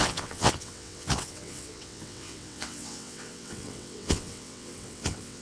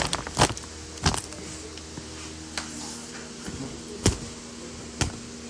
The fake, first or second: first